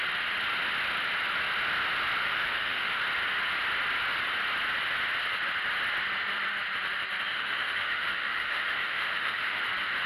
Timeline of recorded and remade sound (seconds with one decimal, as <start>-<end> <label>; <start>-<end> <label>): 0.0-2.2 recorded; 2.2-3.0 remade; 3.0-7.3 recorded; 7.3-9.6 remade; 9.6-10.1 recorded